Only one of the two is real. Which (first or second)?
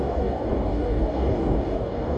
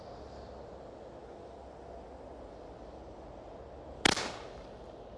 second